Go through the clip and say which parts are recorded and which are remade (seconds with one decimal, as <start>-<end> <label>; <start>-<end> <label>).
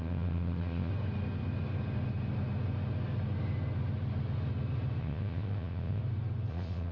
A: 0.0-0.9 remade; 0.9-5.0 recorded; 5.0-6.0 remade; 6.0-6.5 recorded; 6.5-6.9 remade